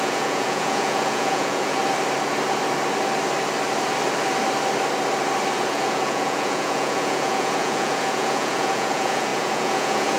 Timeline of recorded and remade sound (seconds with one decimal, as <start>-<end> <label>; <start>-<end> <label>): 0.0-1.8 remade; 1.8-5.6 recorded; 5.6-10.2 remade